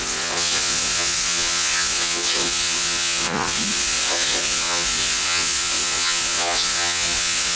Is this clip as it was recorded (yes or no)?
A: no